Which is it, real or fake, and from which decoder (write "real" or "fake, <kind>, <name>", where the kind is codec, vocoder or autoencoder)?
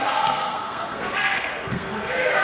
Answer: fake, codec, SNAC